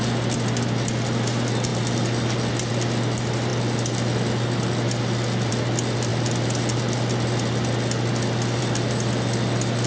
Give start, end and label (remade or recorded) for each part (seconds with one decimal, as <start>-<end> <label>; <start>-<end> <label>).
0.0-9.9 recorded